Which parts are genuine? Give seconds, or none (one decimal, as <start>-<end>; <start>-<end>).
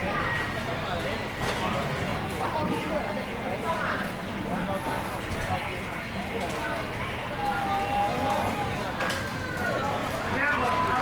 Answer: 0.0-2.1; 5.2-10.0; 10.5-11.0